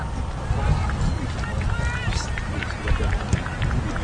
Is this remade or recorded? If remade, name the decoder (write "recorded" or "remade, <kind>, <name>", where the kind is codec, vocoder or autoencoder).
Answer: recorded